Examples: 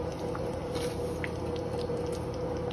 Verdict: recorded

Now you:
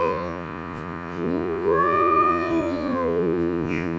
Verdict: remade